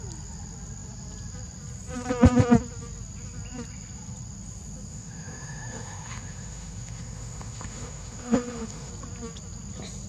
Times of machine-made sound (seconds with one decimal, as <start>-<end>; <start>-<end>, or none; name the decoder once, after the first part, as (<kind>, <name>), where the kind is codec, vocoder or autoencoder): 4.9-8.9 (autoencoder, DAC-VAE)